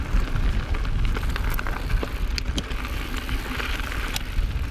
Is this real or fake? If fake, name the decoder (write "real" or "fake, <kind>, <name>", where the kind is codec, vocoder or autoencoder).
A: real